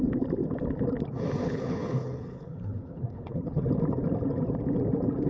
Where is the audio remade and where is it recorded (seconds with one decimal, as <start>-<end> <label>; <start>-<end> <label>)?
0.0-1.4 recorded; 1.4-3.6 remade; 3.6-5.3 recorded